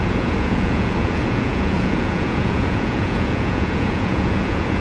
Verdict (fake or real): fake